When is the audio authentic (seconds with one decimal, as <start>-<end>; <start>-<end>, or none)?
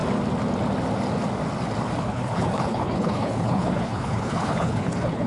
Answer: 0.0-2.0